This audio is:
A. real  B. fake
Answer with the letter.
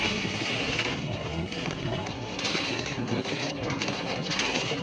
B